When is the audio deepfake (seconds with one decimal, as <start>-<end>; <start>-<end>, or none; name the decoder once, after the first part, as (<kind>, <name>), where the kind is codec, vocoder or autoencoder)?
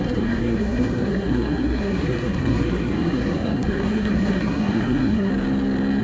0.0-5.3 (codec, SNAC)